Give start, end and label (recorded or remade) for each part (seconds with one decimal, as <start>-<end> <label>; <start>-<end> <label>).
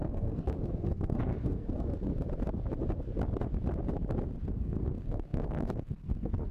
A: 0.0-2.1 remade; 2.1-4.5 recorded; 4.5-6.5 remade